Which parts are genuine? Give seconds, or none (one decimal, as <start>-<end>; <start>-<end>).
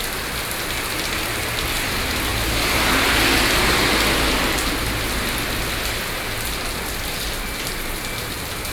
0.0-8.7